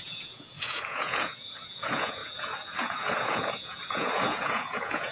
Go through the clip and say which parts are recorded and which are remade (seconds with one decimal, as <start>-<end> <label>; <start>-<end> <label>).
0.0-5.1 remade